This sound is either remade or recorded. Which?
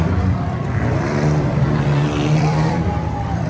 remade